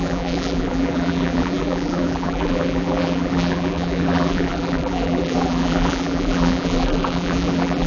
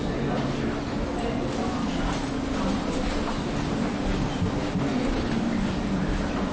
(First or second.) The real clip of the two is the second